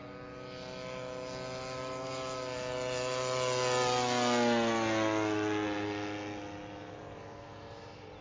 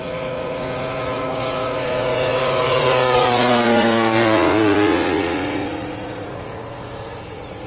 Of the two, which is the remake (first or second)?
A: second